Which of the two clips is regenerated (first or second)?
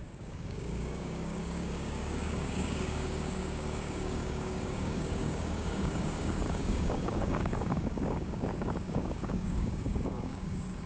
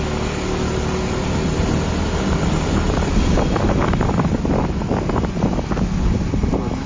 first